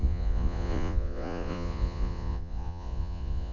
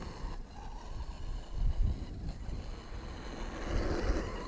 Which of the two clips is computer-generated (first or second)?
first